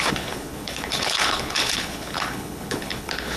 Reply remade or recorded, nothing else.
remade